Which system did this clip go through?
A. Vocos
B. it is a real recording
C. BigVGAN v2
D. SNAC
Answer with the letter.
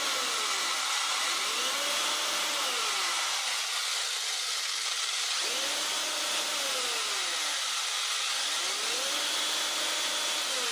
B